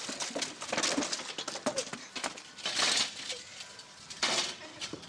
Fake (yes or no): no